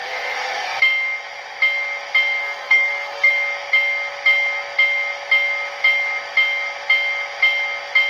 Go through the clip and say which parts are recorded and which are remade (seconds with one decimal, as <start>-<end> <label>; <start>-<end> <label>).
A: 0.0-0.8 remade; 0.8-2.4 recorded; 2.4-3.3 remade; 3.3-8.1 recorded